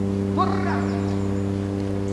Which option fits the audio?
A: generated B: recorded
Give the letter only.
B